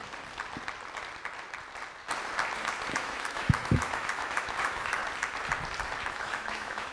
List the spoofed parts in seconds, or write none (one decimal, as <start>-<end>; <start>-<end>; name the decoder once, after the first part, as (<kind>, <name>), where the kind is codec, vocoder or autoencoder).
2.9-5.0 (autoencoder, DAC-VAE); 6.0-6.9